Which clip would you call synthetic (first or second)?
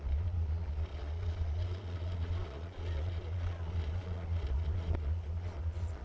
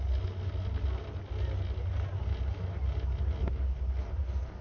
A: first